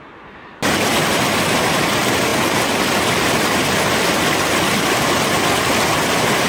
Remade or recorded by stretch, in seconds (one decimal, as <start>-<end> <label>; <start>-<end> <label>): 0.0-6.5 recorded